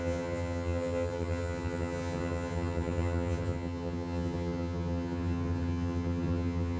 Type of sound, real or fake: fake